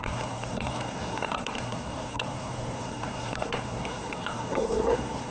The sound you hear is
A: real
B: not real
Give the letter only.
B